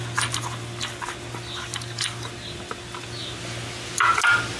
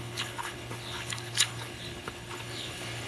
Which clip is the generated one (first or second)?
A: second